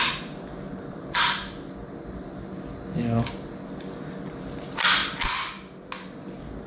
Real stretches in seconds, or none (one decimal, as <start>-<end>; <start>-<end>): 1.4-4.0; 5.0-6.7